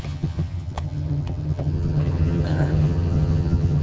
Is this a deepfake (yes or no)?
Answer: yes